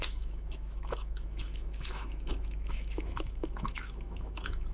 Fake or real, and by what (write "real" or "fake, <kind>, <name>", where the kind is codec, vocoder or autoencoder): fake, autoencoder, DAC-VAE